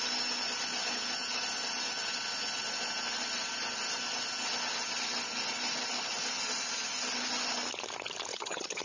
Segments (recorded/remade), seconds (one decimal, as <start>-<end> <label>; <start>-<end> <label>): 0.0-8.3 recorded; 8.3-8.8 remade